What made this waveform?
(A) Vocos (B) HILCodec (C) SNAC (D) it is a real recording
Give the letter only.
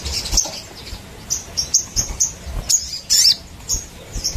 D